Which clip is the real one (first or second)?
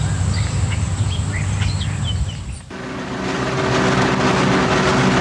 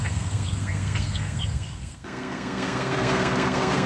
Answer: first